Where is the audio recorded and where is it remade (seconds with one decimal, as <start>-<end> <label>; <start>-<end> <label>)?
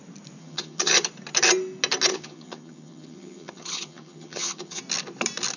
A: 0.0-0.4 recorded; 0.4-0.9 remade; 0.9-2.1 recorded; 2.1-4.8 remade; 4.8-5.6 recorded